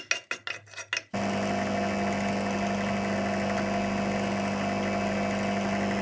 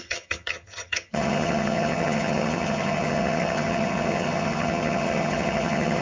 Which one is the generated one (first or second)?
second